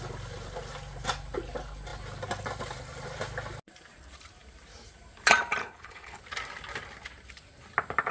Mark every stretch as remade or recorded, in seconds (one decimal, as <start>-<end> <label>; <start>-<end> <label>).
0.0-5.6 recorded; 5.6-6.2 remade; 6.2-8.1 recorded